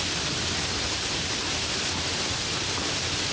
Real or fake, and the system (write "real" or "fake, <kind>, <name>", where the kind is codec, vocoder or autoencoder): real